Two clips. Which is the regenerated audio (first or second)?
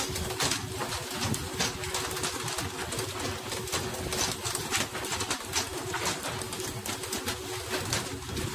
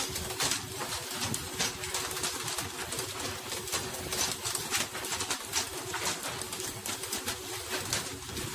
second